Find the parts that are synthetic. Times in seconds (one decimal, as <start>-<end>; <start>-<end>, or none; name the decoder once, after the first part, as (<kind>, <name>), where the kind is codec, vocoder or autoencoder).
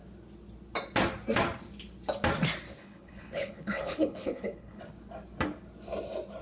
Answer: 2.8-4.8 (codec, HILCodec)